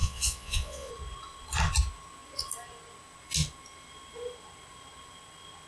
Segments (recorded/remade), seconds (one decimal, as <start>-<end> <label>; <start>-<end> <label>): 0.0-0.9 remade; 0.9-5.7 recorded